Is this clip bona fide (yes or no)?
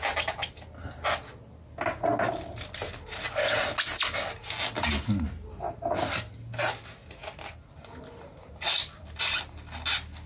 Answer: yes